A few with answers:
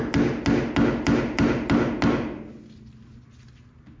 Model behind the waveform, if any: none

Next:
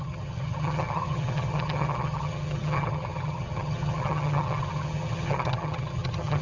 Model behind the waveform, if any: vocoder, HiFi-GAN